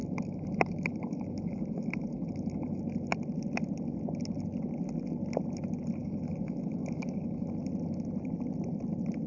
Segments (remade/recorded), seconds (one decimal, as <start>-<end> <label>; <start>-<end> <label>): 0.0-2.8 remade; 2.8-6.0 recorded; 6.0-7.5 remade; 7.5-9.3 recorded